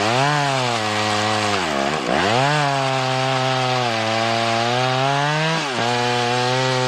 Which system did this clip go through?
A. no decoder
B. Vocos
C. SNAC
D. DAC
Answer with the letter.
A